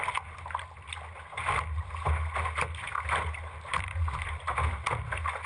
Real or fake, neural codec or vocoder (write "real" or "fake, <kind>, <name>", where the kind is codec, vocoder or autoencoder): real